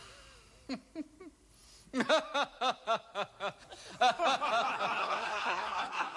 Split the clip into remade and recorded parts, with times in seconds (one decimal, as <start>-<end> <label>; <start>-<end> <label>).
0.0-5.0 recorded; 5.0-6.2 remade